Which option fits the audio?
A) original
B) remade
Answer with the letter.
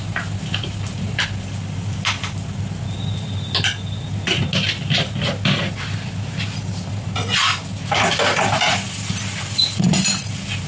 A